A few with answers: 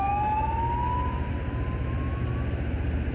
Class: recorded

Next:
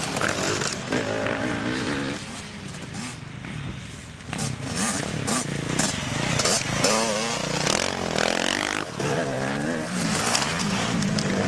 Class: recorded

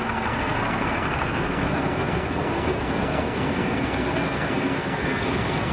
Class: remade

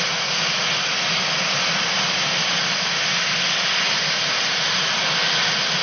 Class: recorded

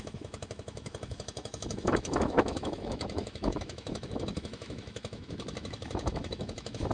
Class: remade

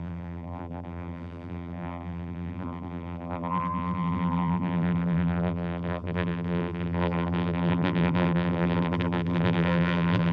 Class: remade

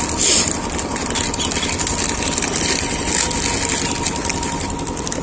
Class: recorded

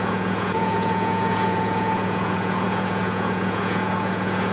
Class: remade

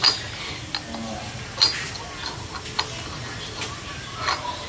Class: recorded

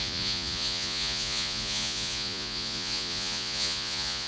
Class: remade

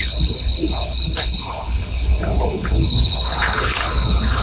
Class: remade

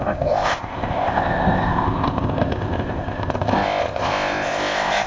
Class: remade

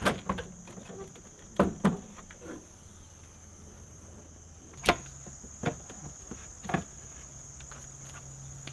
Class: recorded